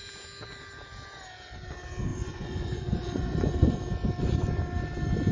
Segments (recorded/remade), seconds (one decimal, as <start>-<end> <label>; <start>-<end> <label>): 0.0-2.1 recorded; 2.1-3.8 remade; 3.8-5.3 recorded